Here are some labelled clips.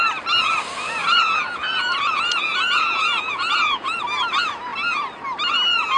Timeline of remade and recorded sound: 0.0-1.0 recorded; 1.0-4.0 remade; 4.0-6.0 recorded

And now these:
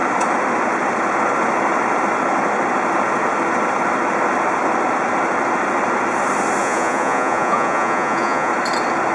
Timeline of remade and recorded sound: 0.0-6.6 recorded; 6.6-8.5 remade; 8.5-9.1 recorded